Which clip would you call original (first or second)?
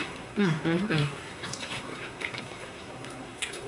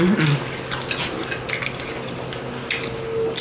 second